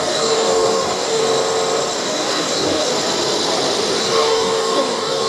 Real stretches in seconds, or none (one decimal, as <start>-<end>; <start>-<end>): 1.2-2.0; 2.9-4.0